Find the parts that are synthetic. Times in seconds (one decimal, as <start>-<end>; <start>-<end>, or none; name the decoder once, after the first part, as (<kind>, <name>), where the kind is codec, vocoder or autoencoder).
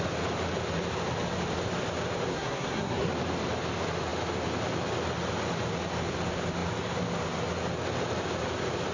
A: 2.3-3.1 (codec, SNAC)